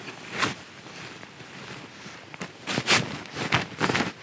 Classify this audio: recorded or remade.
recorded